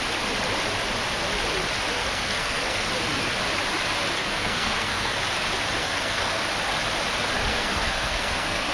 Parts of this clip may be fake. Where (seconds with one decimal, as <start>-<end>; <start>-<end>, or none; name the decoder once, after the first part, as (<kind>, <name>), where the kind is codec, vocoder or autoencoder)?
2.0-2.9 (codec, SNAC); 4.2-5.2; 5.8-6.4; 7.5-8.7